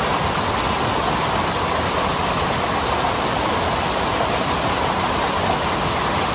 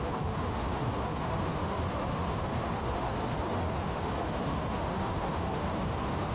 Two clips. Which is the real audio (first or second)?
first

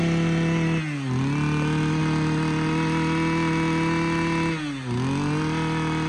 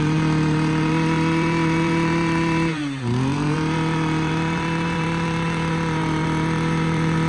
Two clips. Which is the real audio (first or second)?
first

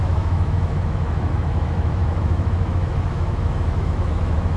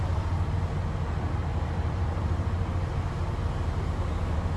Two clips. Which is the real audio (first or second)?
second